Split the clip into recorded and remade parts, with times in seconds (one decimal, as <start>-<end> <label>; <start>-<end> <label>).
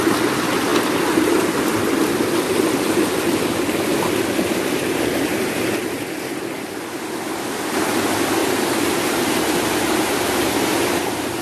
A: 0.0-8.4 recorded; 8.4-9.2 remade; 9.2-11.4 recorded